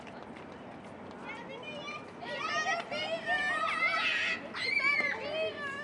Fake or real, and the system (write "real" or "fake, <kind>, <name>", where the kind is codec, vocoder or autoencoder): real